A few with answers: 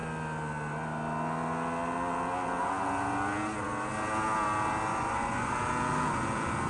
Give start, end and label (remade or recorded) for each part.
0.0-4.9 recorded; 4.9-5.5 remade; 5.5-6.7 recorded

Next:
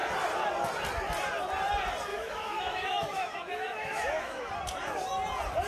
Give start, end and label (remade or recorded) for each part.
0.0-2.1 recorded; 2.1-4.5 remade; 4.5-5.7 recorded

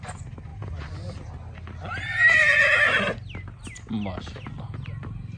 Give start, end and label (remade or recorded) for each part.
0.0-5.4 recorded

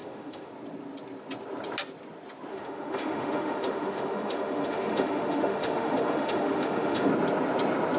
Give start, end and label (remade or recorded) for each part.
0.0-0.5 remade; 0.5-2.5 recorded; 2.5-7.1 remade; 7.1-8.0 recorded

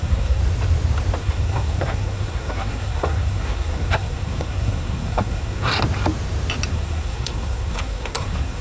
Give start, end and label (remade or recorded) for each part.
0.0-0.4 remade; 0.4-1.2 recorded; 1.2-5.7 remade; 5.7-6.7 recorded; 6.7-8.6 remade